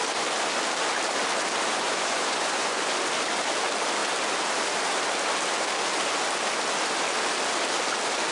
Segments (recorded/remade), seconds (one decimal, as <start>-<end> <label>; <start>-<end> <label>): 0.0-1.7 recorded; 1.7-3.0 remade; 3.0-8.3 recorded